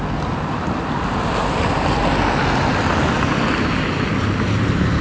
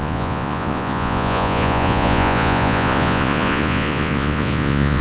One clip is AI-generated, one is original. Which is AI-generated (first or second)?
second